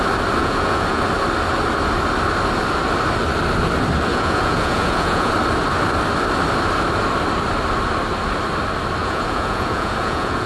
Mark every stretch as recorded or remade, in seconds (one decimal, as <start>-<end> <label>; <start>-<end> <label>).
0.0-0.4 recorded; 0.4-1.0 remade; 1.0-4.1 recorded; 4.1-5.3 remade; 5.3-9.0 recorded; 9.0-10.5 remade